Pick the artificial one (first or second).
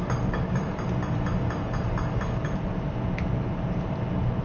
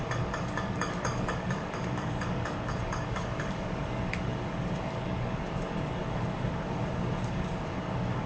second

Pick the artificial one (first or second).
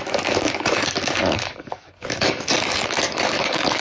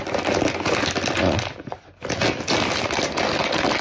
first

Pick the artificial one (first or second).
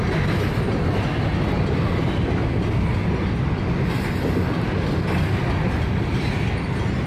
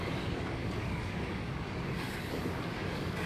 second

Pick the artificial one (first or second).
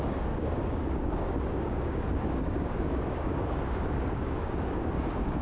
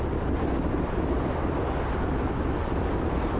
first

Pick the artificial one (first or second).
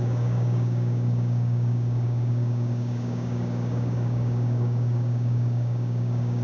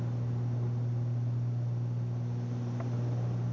first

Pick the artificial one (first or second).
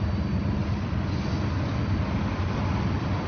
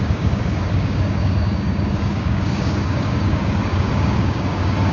second